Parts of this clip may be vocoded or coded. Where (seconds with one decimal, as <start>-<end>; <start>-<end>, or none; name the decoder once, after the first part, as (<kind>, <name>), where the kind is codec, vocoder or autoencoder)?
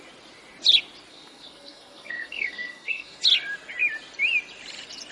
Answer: 1.1-3.2 (codec, SNAC)